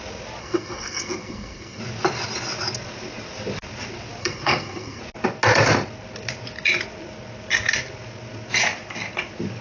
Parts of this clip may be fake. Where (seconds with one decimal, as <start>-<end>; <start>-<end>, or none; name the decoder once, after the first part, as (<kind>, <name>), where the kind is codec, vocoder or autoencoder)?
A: 0.4-1.8 (codec, SNAC); 4.2-5.0